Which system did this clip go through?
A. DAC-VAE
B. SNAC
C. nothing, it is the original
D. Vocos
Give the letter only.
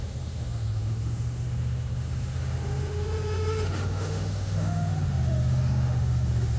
A